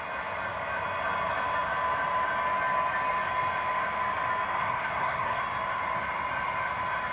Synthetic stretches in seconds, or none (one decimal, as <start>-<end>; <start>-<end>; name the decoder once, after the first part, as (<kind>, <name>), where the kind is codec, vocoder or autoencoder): 4.6-5.4 (codec, SNAC)